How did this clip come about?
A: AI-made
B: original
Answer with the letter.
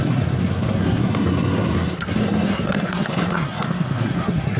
A